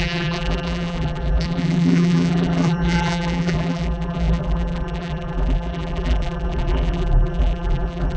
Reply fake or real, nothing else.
fake